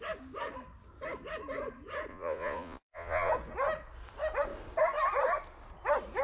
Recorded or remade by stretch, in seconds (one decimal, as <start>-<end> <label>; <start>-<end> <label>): 0.0-2.1 recorded; 2.1-3.3 remade; 3.3-6.2 recorded